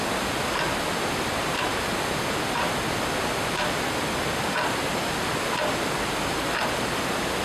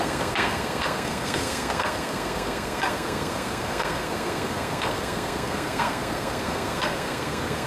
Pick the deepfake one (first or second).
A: second